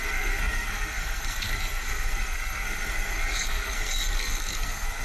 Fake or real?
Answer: fake